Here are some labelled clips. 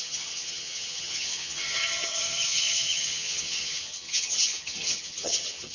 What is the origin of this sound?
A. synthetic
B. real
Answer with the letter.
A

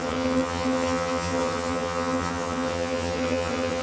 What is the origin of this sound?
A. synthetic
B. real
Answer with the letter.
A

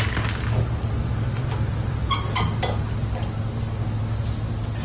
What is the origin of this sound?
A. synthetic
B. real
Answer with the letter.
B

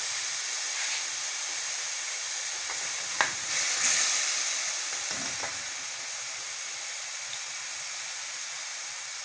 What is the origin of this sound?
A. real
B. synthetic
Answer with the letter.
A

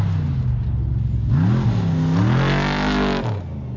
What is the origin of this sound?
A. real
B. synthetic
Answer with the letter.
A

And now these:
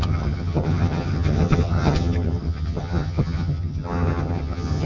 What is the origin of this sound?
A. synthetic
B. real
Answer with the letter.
A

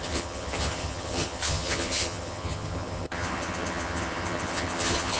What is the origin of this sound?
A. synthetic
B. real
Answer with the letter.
A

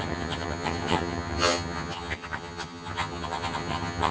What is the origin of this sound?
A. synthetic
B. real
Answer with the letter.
A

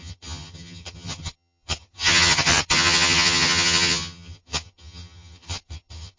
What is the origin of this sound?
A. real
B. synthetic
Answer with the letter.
B